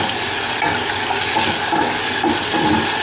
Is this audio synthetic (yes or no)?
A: no